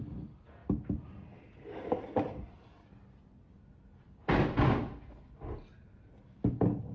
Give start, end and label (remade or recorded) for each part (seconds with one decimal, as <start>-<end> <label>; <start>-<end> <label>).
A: 0.0-6.9 recorded